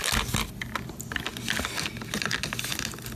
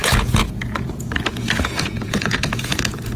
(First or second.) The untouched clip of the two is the first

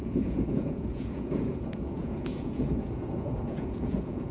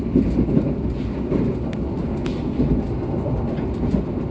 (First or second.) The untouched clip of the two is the second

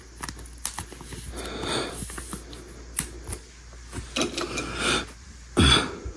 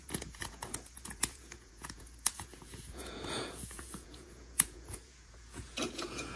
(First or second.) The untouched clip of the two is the first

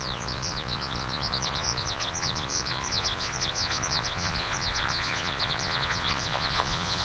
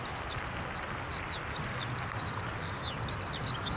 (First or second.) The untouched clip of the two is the second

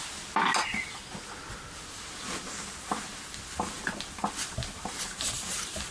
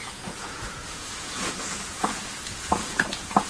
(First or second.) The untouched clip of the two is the first